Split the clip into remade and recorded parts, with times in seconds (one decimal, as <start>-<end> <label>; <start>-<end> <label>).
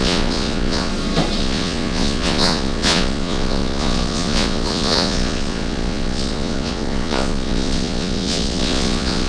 0.0-0.9 remade; 0.9-1.4 recorded; 1.4-9.3 remade